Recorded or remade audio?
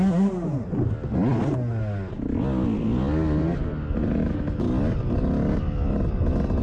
recorded